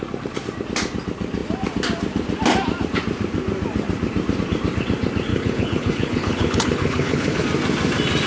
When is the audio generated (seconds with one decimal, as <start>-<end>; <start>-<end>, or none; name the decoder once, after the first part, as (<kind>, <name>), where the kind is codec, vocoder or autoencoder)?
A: 5.3-7.4 (codec, HILCodec)